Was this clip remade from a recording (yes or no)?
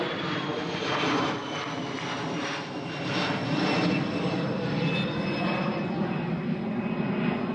no